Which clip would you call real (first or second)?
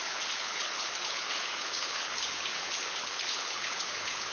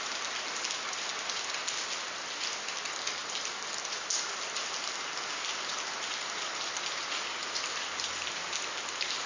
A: second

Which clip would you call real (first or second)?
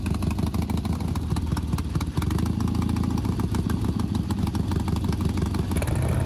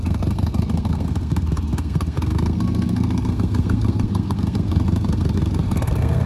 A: first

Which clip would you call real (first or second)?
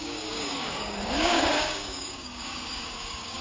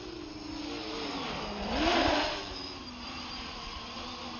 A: second